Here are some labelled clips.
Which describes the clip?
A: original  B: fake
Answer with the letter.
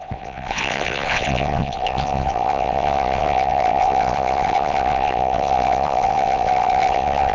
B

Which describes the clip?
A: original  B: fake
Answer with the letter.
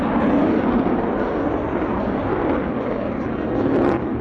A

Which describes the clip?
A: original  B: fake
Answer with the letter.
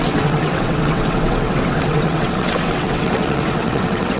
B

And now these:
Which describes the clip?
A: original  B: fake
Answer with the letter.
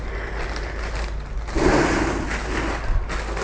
A